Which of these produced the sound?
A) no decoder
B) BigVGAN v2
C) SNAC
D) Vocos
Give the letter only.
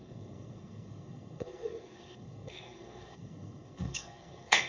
C